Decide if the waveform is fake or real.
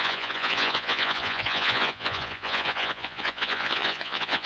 fake